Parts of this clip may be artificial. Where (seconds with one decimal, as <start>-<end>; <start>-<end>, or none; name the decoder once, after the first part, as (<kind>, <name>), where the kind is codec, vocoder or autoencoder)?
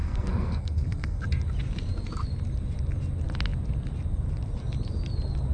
0.0-1.2 (codec, SNAC)